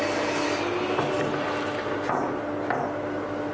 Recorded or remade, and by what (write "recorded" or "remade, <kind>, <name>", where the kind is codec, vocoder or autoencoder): recorded